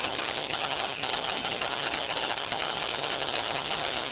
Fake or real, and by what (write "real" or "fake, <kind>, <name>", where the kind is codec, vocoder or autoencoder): fake, vocoder, HiFi-GAN